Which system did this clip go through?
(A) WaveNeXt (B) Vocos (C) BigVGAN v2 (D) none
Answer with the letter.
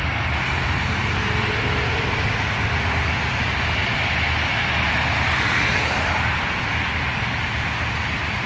D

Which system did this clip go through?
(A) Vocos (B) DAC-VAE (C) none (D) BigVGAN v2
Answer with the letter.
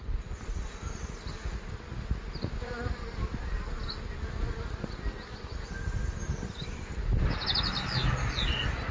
C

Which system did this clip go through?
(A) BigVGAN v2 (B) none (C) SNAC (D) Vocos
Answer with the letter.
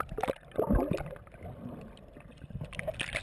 A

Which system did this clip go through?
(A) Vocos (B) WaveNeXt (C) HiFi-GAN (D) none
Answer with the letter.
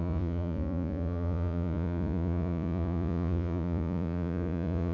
A